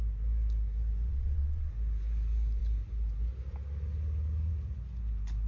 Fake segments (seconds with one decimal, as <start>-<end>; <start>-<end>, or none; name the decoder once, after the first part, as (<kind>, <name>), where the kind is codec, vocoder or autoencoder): 1.1-1.7 (vocoder, WaveNeXt)